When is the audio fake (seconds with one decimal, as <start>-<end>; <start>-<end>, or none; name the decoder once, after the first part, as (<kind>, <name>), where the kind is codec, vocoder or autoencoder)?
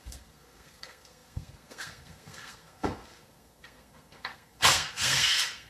0.0-5.7 (codec, SNAC)